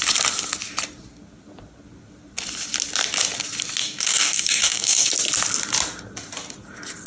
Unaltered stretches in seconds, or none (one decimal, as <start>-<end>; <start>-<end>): 0.0-3.8; 5.1-7.1